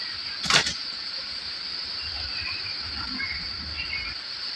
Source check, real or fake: fake